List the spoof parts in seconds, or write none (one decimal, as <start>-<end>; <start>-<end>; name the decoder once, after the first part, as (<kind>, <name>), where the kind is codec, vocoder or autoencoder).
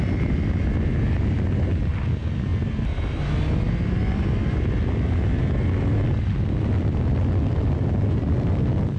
none